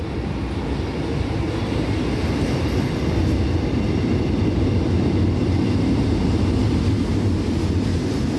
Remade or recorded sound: recorded